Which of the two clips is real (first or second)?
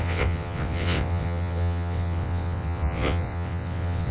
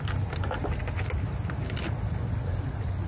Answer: second